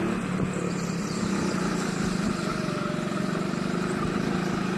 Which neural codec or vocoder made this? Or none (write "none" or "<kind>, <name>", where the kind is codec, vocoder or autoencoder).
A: none